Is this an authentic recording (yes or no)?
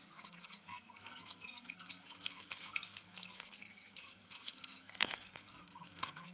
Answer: no